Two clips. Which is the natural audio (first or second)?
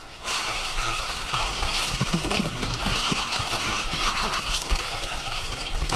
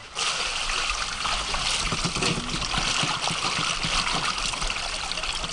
second